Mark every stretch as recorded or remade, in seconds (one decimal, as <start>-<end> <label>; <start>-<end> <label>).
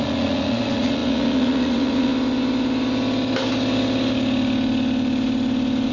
0.0-2.1 remade; 2.1-5.9 recorded